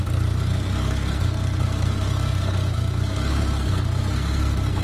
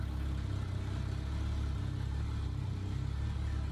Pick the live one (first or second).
second